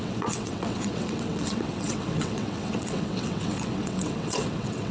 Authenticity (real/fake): fake